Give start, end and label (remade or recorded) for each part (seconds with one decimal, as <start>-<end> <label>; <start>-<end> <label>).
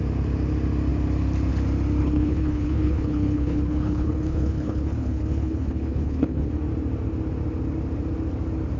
0.0-2.0 recorded; 2.0-6.5 remade; 6.5-8.8 recorded